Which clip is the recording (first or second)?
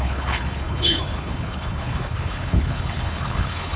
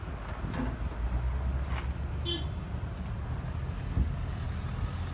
second